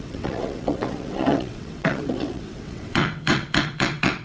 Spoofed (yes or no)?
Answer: yes